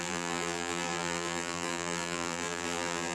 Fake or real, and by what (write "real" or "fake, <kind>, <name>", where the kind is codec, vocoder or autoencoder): fake, vocoder, BigVGAN v2